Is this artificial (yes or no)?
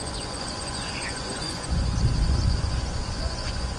yes